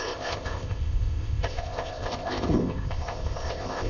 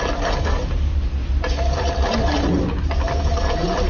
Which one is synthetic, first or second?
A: first